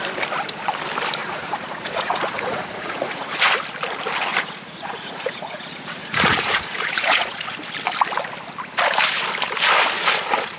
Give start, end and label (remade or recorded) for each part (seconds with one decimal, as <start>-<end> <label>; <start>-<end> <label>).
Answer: 0.0-1.2 recorded; 1.2-3.5 remade; 3.5-4.3 recorded; 4.3-7.4 remade; 7.4-10.6 recorded